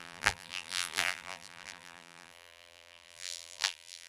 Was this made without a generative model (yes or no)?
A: no